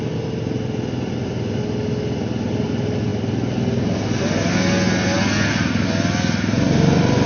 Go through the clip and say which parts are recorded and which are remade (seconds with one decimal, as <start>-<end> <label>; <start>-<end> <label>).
0.0-7.3 recorded